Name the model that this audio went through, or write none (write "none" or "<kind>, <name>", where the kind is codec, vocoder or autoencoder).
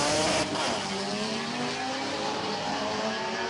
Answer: vocoder, BigVGAN v2